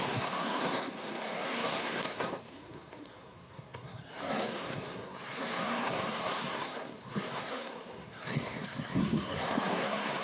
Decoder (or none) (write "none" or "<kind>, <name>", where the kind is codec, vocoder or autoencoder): codec, SNAC